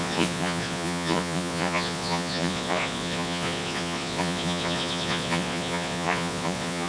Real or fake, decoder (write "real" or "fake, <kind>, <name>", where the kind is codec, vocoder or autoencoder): fake, vocoder, Vocos